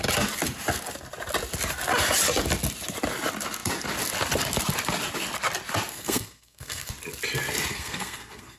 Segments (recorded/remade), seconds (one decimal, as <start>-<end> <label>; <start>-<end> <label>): 0.0-5.9 recorded; 5.9-6.9 remade; 6.9-7.7 recorded; 7.7-8.6 remade